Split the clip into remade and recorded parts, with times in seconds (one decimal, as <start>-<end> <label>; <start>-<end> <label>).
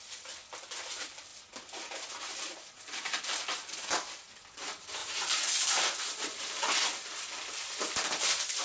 0.0-8.6 remade